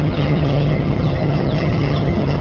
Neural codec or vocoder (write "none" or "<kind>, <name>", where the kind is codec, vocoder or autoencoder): vocoder, HiFi-GAN